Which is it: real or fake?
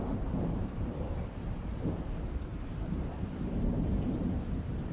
fake